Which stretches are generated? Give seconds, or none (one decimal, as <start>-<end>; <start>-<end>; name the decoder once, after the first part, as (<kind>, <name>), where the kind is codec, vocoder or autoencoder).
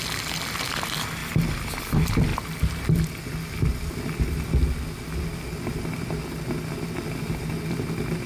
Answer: none